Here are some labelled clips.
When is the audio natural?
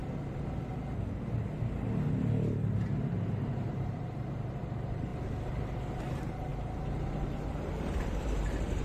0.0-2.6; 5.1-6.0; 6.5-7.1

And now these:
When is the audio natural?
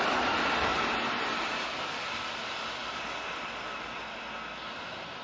0.0-5.2